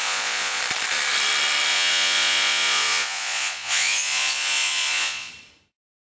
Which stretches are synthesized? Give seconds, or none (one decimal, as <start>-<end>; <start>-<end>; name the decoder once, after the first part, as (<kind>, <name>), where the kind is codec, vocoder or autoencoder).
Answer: 0.0-0.6 (vocoder, Vocos); 1.7-5.3